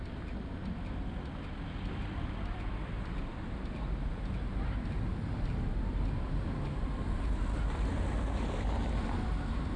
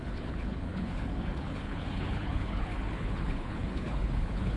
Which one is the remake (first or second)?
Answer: second